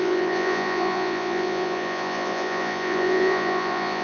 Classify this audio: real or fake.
fake